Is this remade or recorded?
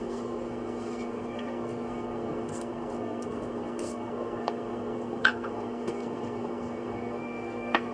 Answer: remade